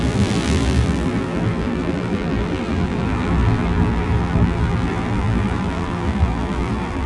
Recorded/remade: remade